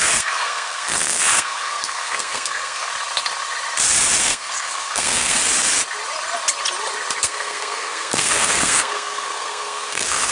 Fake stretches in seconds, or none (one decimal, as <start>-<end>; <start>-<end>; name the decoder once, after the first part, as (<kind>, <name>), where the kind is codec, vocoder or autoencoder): 0.0-2.9 (codec, SNAC); 4.2-5.4; 7.2-10.3

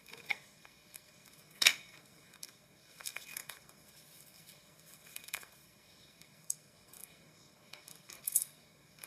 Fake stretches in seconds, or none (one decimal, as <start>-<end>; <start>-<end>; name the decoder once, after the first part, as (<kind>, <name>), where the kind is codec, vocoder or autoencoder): 0.0-9.1 (codec, SNAC)